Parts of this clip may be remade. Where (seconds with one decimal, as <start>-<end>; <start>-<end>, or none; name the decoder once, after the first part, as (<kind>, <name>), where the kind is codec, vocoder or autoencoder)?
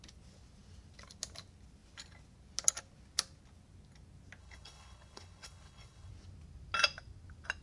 4.4-6.1 (codec, HILCodec)